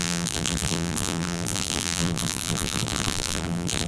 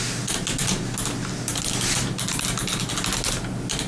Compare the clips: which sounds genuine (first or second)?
second